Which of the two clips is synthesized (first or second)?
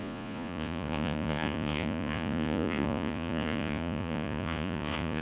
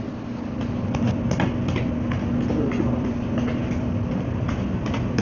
first